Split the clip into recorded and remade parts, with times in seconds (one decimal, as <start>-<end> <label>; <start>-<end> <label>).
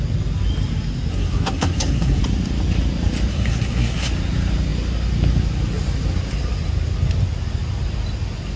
0.0-1.1 recorded; 1.1-2.2 remade; 2.2-3.3 recorded; 3.3-4.1 remade; 4.1-8.6 recorded